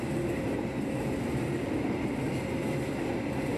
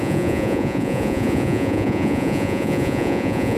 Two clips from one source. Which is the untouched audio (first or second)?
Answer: first